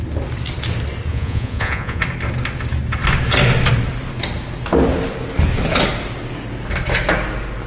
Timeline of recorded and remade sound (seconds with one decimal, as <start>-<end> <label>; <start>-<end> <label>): 0.0-1.1 recorded; 1.1-2.0 remade; 2.0-7.7 recorded